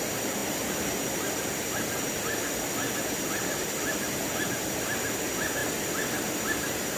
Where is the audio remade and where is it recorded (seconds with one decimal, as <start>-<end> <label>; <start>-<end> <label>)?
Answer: 0.0-7.0 recorded